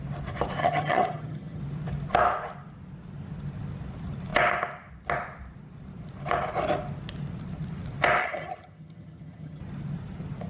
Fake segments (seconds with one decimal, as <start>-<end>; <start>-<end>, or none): 0.6-1.6; 8.2-9.6